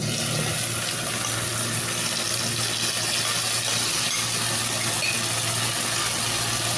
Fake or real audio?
real